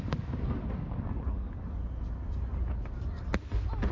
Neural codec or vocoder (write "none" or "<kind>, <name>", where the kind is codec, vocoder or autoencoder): none